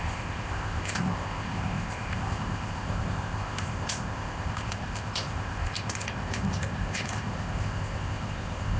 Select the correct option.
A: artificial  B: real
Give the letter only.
A